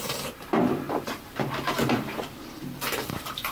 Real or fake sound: fake